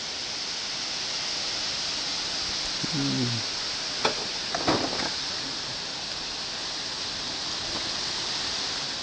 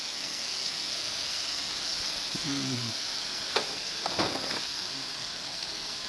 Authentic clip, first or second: first